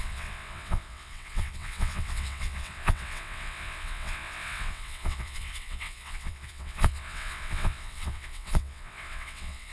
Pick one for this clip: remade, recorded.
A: remade